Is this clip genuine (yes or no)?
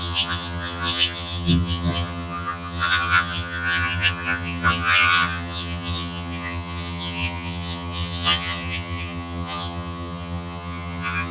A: no